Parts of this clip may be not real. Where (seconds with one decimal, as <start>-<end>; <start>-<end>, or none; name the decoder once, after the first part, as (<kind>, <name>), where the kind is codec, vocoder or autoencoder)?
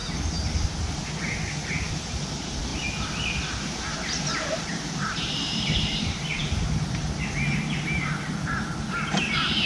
1.9-2.7 (vocoder, BigVGAN v2); 3.6-9.7